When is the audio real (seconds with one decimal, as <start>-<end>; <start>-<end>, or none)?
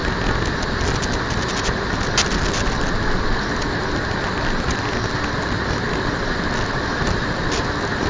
0.0-8.1